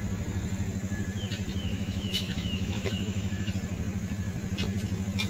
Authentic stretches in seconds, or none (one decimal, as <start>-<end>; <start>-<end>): 0.0-1.6; 3.5-5.3

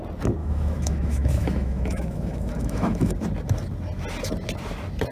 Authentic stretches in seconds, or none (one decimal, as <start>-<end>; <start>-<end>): 0.0-0.4; 3.1-5.1

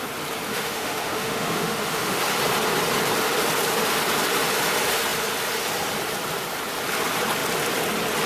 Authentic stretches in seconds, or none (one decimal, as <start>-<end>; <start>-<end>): 0.0-0.5; 2.2-8.3

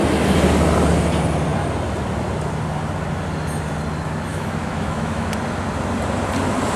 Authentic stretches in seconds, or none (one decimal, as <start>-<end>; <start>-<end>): 0.0-4.3; 5.3-6.8

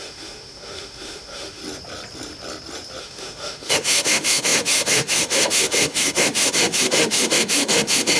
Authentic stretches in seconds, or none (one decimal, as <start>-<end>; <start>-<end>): 1.6-3.0

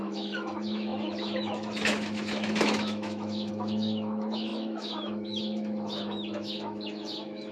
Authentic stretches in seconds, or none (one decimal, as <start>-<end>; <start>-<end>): none

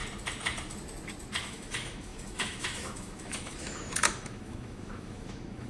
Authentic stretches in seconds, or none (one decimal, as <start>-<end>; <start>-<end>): 0.0-1.4